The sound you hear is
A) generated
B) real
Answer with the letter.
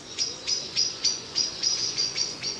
A